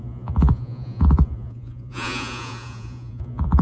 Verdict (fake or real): fake